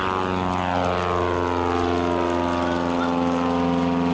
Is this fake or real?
real